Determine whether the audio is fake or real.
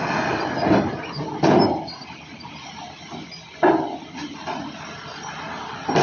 real